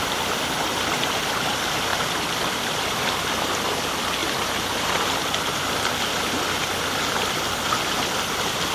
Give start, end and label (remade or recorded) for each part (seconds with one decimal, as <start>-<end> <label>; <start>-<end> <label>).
0.0-1.9 recorded; 1.9-2.8 remade; 2.8-4.2 recorded; 4.2-5.9 remade; 5.9-8.7 recorded